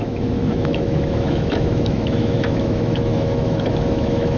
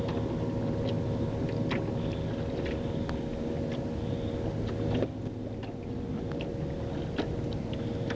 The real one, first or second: second